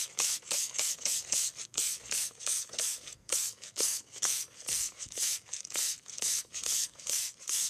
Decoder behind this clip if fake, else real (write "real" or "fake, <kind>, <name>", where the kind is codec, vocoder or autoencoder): fake, codec, SNAC